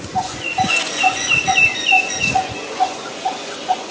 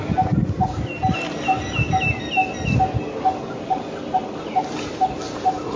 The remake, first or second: first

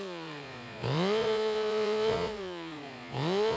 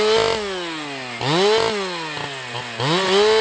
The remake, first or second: first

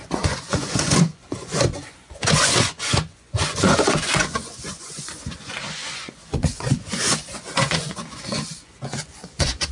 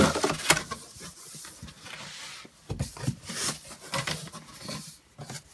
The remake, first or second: first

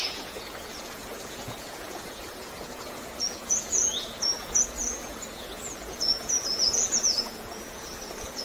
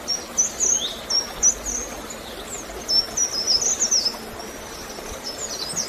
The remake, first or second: first